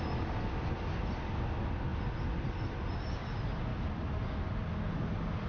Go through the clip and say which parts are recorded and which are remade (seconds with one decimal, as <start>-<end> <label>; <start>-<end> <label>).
0.0-5.5 recorded